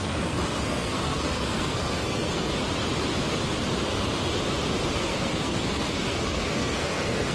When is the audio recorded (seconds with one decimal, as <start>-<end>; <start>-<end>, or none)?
2.6-5.0